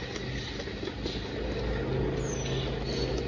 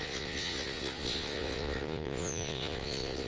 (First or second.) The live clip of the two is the first